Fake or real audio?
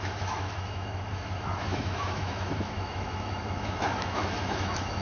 fake